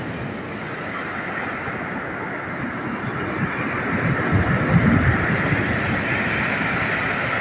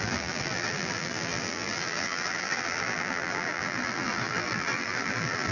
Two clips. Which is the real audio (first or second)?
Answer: first